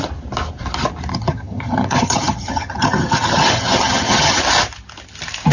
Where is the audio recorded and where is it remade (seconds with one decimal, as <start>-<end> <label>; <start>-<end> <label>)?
0.0-1.1 recorded; 1.1-4.4 remade; 4.4-5.5 recorded